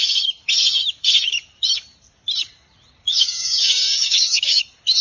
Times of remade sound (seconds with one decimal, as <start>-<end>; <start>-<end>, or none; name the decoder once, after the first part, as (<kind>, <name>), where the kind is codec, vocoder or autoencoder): 3.1-4.6 (codec, DAC)